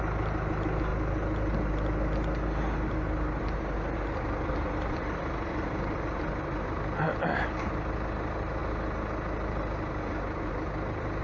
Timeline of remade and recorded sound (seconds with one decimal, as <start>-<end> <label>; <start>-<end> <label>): 0.0-11.2 recorded